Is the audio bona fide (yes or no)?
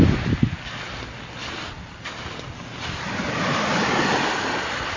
yes